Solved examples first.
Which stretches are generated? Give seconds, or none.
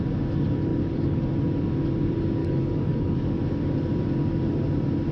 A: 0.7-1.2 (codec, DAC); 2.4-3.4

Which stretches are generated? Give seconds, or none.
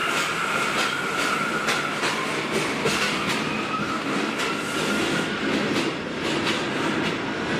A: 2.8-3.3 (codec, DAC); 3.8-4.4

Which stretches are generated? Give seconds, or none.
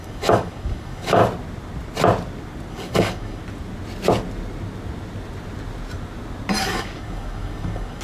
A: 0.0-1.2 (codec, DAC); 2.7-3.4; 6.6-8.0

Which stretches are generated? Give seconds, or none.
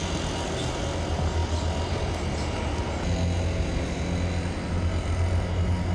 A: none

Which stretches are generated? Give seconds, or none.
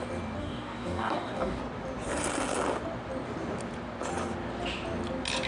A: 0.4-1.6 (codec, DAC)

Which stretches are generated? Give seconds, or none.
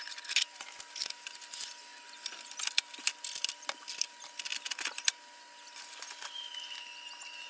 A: none